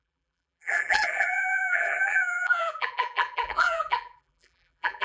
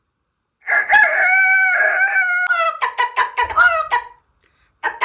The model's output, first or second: first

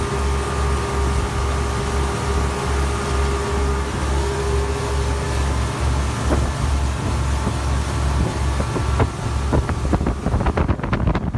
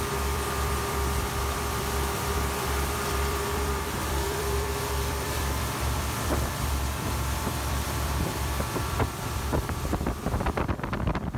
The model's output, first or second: second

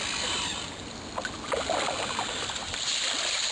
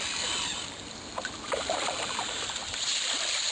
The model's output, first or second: second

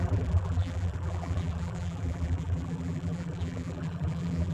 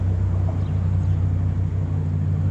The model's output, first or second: first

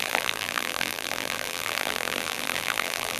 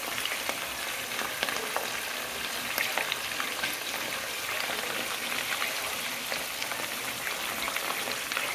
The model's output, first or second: first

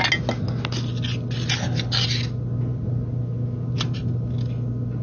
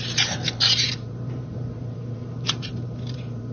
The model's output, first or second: second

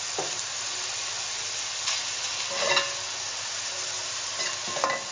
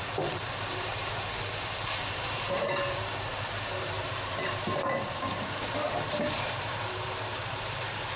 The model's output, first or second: second